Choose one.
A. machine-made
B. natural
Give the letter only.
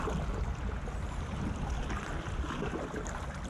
B